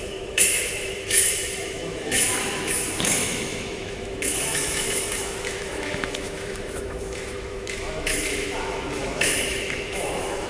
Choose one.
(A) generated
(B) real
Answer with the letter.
A